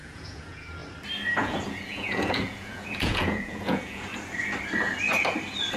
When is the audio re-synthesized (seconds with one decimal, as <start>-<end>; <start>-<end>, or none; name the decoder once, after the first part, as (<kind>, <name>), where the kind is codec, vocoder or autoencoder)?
0.0-0.8 (vocoder, Vocos); 1.4-4.1